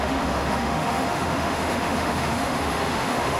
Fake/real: fake